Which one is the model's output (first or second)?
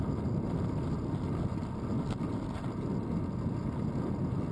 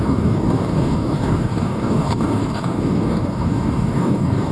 second